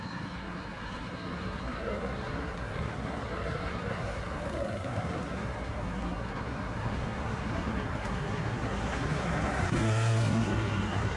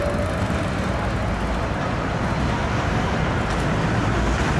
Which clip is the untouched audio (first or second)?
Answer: second